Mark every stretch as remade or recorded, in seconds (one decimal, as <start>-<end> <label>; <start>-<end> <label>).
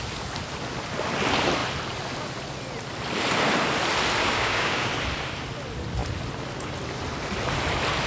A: 0.0-4.2 recorded; 4.2-4.9 remade; 4.9-8.1 recorded